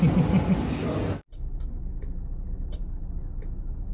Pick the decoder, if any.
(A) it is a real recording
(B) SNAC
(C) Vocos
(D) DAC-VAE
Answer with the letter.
A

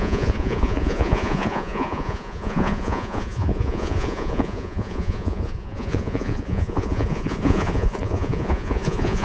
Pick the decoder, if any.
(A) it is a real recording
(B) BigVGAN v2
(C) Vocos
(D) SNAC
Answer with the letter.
C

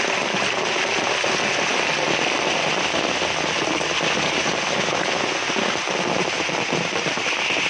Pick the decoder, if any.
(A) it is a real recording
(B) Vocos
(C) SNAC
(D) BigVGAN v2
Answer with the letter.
A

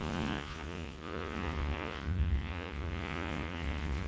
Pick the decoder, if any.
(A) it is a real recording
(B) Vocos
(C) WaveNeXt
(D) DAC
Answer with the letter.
B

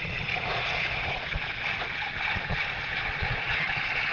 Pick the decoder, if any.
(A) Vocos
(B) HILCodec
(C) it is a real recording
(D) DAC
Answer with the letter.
A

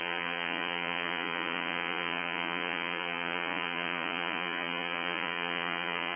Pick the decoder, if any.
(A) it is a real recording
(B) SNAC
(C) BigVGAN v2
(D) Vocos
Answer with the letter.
D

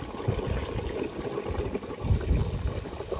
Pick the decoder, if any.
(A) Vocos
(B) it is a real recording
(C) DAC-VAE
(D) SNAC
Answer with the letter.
B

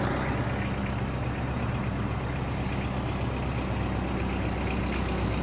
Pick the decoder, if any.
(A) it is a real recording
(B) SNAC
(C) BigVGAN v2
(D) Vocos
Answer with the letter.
A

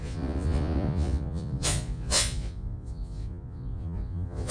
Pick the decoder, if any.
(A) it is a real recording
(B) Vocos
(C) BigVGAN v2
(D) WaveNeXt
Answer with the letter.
B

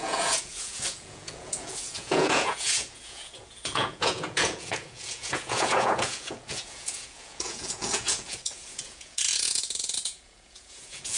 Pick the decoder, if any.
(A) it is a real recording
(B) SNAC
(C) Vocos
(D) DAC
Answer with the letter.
C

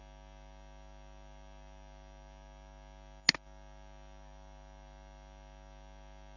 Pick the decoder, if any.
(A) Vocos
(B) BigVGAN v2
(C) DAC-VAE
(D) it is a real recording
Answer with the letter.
D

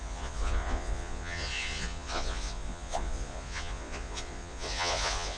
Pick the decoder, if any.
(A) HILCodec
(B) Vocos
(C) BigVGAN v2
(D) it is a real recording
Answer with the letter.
B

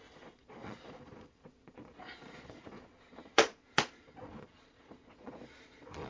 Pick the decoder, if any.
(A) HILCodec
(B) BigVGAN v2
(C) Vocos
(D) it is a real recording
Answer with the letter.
C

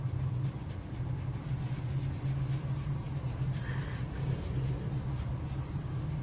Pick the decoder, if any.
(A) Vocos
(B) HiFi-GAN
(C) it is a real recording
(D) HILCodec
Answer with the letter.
C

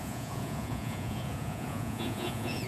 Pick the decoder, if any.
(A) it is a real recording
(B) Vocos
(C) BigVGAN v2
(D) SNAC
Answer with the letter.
B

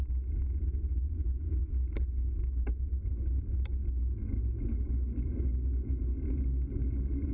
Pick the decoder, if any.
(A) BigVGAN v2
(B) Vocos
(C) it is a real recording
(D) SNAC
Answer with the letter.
C